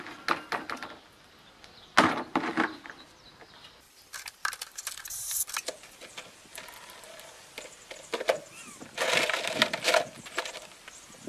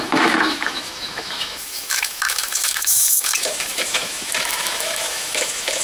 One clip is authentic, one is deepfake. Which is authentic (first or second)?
first